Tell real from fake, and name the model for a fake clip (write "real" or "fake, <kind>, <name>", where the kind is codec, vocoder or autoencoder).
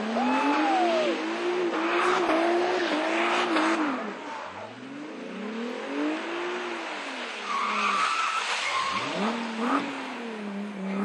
real